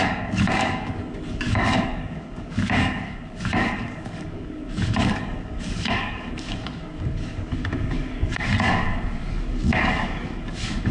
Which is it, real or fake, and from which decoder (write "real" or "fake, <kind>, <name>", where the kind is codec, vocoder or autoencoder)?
fake, codec, DAC